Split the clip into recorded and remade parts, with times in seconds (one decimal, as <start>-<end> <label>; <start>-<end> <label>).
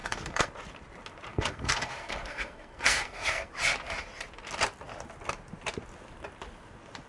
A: 0.0-0.5 remade; 0.5-1.3 recorded; 1.3-3.5 remade; 3.5-7.1 recorded